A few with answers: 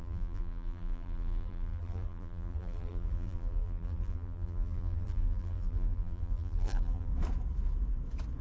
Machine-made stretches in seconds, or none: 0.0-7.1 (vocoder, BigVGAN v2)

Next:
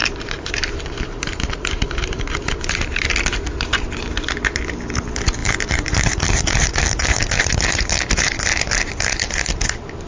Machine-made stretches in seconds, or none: 0.0-2.9 (vocoder, BigVGAN v2); 5.4-8.3